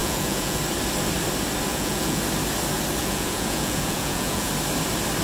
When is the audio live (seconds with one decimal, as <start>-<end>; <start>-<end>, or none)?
0.6-1.7; 2.2-3.0; 4.5-5.2